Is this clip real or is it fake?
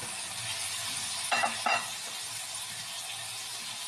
real